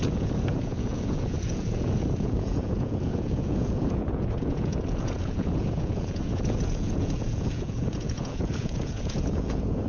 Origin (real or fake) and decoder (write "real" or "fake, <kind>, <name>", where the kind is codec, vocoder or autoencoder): fake, vocoder, Vocos